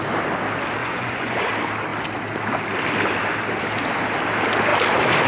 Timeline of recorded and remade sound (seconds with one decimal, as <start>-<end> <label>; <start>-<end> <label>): 0.0-0.8 recorded; 0.8-1.5 remade; 1.5-5.3 recorded